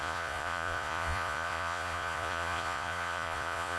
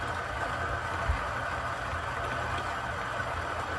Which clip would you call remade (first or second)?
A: first